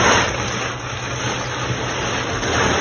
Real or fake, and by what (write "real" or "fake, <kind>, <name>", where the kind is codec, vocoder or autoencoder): real